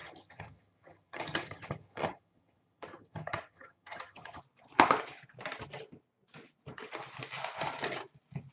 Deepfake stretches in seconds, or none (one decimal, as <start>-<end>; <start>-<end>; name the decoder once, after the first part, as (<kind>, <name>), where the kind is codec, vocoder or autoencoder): 0.0-4.4 (vocoder, HiFi-GAN)